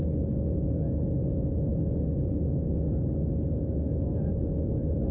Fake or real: real